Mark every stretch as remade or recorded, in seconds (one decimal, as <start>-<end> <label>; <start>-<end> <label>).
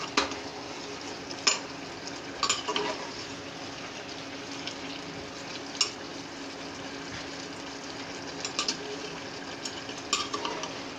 0.0-2.7 recorded; 2.7-3.4 remade; 3.4-11.0 recorded